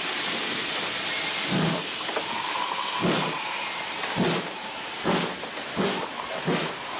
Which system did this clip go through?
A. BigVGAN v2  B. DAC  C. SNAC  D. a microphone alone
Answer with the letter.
D